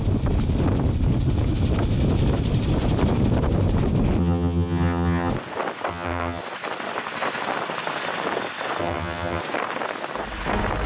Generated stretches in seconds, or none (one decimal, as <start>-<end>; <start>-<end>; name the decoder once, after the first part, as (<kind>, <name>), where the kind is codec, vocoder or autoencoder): 4.2-5.3 (vocoder, HiFi-GAN); 5.9-6.4; 8.8-9.4